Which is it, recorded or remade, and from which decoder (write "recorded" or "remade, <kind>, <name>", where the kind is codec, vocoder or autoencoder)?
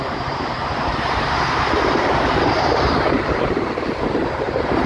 remade, vocoder, BigVGAN v2